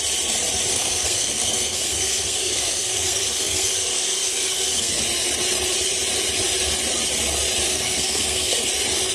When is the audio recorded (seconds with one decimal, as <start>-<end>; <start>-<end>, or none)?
0.0-0.7; 5.0-7.7; 8.7-9.1